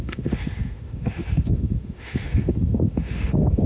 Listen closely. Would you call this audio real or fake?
fake